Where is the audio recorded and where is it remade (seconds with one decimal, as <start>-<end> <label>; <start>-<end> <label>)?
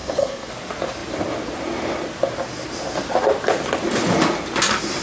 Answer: 0.0-0.5 remade; 0.5-5.0 recorded